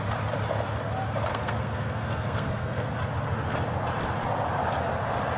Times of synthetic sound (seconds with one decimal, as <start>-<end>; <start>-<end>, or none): 1.3-2.9